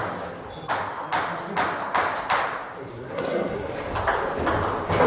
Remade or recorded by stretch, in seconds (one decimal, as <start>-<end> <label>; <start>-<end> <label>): 0.0-2.9 recorded; 2.9-3.7 remade; 3.7-5.1 recorded